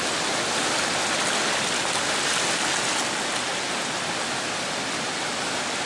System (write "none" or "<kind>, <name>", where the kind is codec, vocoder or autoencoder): none